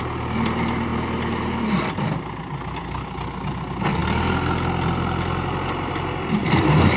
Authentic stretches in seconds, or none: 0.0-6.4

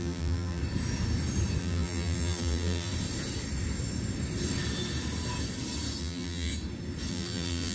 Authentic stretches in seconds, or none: 0.6-1.6; 2.9-6.0; 6.5-7.1

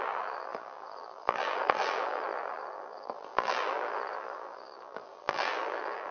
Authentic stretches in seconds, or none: none

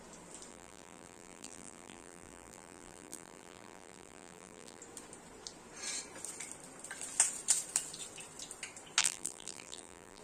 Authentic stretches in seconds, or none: 0.0-0.5; 4.8-9.0